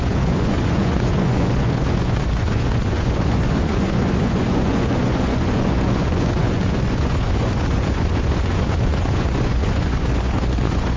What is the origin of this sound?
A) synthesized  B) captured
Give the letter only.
A